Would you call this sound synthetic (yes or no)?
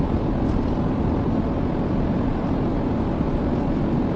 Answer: no